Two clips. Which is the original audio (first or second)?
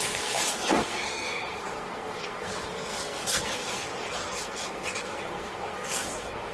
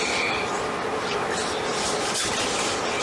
second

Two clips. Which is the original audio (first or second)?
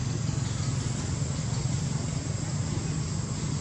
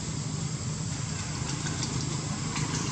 first